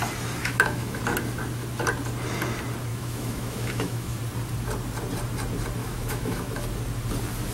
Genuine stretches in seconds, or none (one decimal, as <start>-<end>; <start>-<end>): 0.0-0.4; 1.0-2.9; 4.2-5.8; 6.6-7.5